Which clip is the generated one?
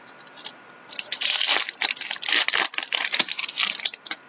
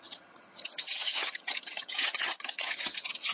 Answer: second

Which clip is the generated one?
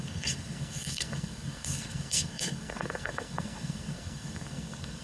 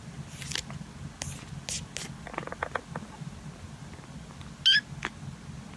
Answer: first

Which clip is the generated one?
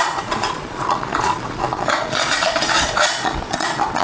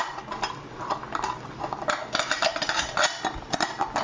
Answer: first